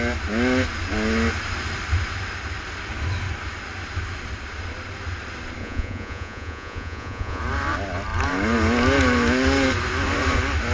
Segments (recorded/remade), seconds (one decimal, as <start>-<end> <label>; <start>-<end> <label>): 0.0-5.6 recorded; 5.6-7.4 remade; 7.4-10.7 recorded